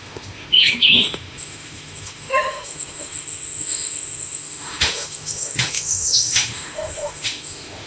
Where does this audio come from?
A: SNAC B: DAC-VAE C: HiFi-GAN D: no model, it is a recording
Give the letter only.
B